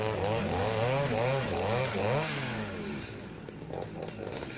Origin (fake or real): fake